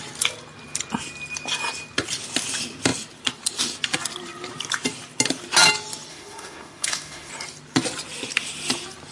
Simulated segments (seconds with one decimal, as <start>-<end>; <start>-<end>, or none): 6.1-7.3